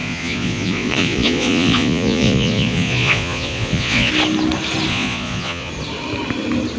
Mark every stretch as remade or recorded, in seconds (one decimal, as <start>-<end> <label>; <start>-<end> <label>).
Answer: 0.0-4.1 remade; 4.1-4.9 recorded; 4.9-5.7 remade; 5.7-6.8 recorded